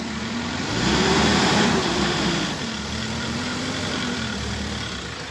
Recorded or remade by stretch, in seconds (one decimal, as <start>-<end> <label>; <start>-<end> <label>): 0.0-5.3 remade